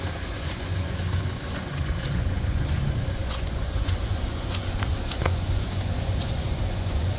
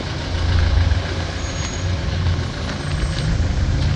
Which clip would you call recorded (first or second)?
second